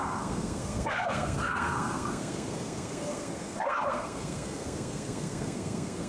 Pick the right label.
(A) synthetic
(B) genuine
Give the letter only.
A